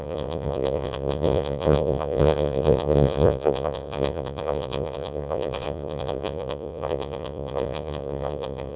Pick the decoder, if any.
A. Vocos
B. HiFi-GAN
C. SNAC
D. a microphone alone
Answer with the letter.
A